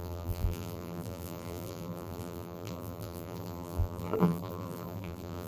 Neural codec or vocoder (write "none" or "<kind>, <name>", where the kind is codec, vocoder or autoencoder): vocoder, BigVGAN v2